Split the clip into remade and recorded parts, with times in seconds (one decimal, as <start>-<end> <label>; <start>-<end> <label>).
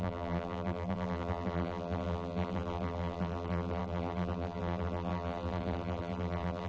0.0-6.7 remade